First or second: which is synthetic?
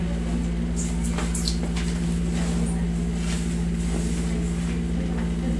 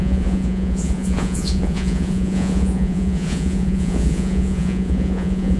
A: second